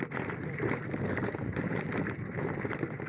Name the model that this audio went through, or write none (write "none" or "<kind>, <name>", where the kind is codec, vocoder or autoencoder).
none